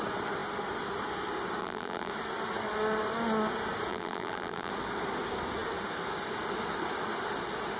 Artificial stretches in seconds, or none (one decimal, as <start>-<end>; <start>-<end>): 1.6-2.1; 3.9-4.7